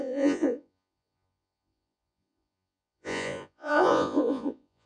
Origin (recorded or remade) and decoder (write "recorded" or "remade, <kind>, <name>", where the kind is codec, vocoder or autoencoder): remade, vocoder, Vocos